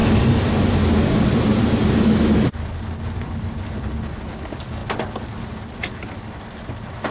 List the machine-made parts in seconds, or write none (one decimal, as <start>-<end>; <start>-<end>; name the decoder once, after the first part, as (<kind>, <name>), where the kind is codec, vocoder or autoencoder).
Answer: none